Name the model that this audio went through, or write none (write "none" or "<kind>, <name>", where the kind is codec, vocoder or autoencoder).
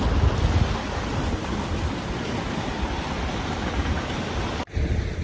none